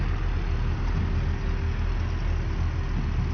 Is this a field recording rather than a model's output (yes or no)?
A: yes